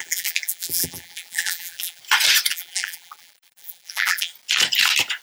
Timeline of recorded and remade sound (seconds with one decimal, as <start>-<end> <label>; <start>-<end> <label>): 0.0-2.0 remade; 2.0-2.5 recorded; 2.5-4.3 remade; 4.3-5.2 recorded